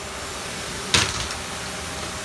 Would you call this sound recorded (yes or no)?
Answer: yes